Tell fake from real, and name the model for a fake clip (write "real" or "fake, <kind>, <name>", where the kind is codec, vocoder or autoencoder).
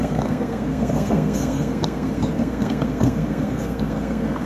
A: fake, codec, SNAC